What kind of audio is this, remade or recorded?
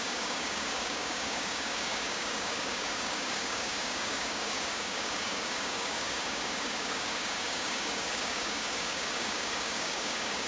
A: remade